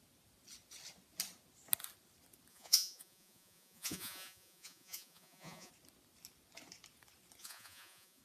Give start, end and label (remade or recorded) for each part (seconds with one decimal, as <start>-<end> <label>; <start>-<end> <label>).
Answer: 0.0-2.5 recorded; 2.5-5.7 remade; 5.7-7.4 recorded; 7.4-8.2 remade